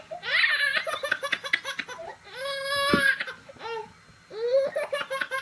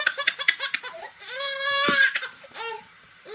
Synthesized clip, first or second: second